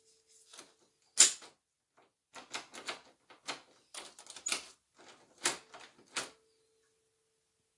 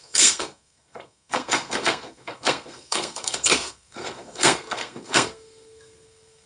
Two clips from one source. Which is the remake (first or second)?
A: second